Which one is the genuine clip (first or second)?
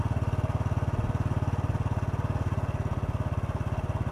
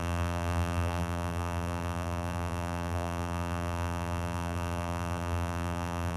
first